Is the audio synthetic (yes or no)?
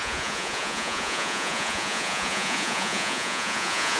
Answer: yes